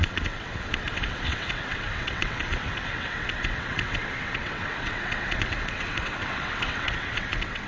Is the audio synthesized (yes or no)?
yes